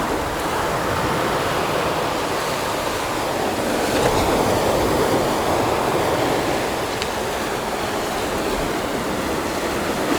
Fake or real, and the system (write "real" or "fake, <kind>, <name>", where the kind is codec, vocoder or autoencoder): real